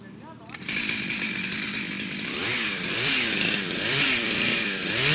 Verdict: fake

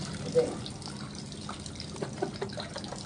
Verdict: real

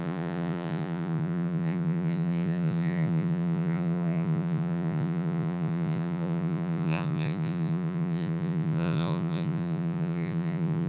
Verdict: fake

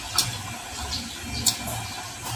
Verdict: real